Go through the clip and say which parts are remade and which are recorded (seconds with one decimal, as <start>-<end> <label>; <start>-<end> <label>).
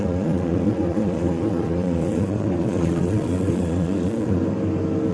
0.0-4.4 remade; 4.4-5.1 recorded